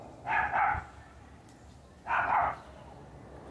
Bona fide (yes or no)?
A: yes